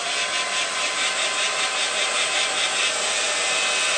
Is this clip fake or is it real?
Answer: real